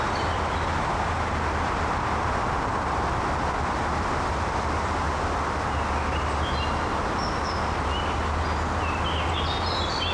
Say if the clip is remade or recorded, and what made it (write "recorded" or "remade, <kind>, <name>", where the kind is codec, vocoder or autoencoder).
recorded